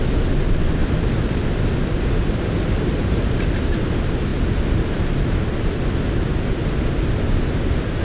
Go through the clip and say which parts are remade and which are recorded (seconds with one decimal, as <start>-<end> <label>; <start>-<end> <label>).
0.0-8.0 recorded